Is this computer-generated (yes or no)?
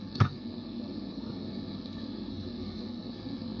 yes